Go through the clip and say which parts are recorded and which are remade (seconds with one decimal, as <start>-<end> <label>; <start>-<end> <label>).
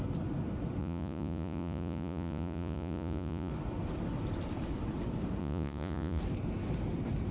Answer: 0.0-0.8 recorded; 0.8-3.5 remade; 3.5-5.4 recorded; 5.4-6.2 remade; 6.2-7.3 recorded